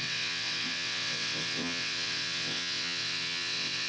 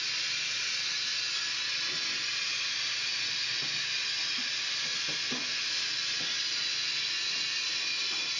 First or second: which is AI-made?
first